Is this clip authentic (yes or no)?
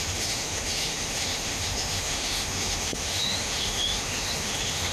no